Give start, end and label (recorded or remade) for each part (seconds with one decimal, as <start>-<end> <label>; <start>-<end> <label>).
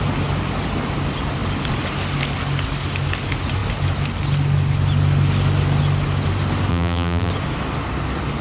0.0-6.7 recorded; 6.7-7.3 remade; 7.3-8.4 recorded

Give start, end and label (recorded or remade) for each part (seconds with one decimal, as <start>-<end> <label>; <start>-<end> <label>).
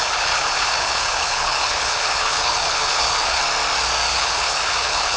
0.0-3.4 remade; 3.4-4.1 recorded; 4.1-5.2 remade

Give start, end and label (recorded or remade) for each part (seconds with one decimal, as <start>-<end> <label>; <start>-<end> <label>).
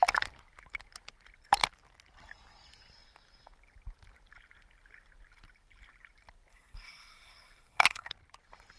0.0-6.5 recorded; 6.5-8.1 remade; 8.1-8.8 recorded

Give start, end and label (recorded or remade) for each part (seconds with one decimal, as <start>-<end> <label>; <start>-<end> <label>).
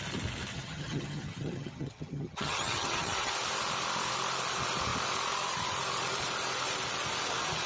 0.0-0.5 recorded; 0.5-3.3 remade; 3.3-7.7 recorded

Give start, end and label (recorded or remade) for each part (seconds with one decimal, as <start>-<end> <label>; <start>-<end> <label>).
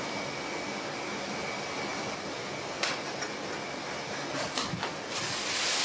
0.0-5.8 recorded